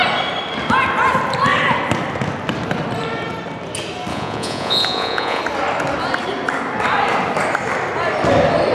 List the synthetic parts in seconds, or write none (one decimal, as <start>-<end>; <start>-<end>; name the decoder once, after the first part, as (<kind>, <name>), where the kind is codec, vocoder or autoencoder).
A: 4.1-5.4 (vocoder, Vocos)